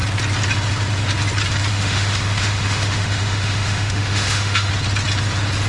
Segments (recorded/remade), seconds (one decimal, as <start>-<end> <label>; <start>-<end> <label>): 0.0-1.7 recorded; 1.7-4.7 remade; 4.7-5.7 recorded